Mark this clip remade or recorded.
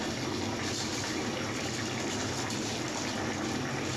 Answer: recorded